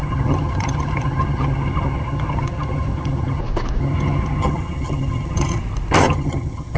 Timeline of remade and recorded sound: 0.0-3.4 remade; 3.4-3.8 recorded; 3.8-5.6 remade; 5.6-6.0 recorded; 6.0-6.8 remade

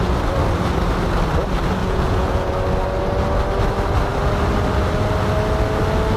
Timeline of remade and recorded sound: 0.0-1.8 recorded; 1.8-2.5 remade; 2.5-6.2 recorded